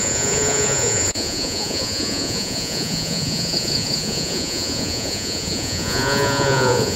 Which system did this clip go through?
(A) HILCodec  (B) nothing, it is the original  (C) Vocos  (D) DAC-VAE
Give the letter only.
C